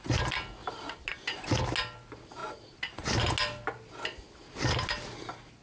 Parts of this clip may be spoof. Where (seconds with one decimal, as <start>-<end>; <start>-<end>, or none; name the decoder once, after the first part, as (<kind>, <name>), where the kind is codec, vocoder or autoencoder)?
none